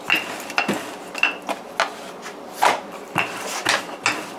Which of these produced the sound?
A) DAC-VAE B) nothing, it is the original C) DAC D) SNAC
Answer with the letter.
B